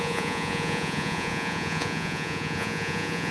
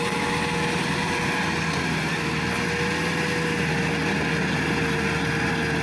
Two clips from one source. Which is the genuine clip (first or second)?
second